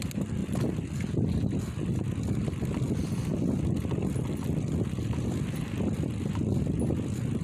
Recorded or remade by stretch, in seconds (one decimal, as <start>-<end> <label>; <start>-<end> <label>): 0.0-7.4 recorded